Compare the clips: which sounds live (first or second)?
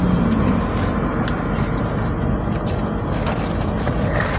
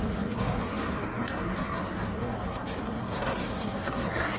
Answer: first